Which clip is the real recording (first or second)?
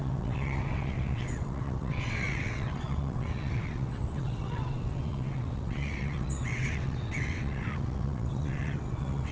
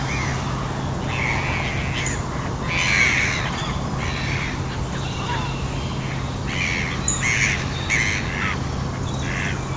second